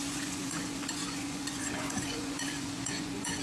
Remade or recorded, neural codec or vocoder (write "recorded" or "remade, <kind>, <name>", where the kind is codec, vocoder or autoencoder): remade, vocoder, Vocos